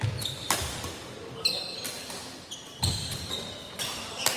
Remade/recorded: remade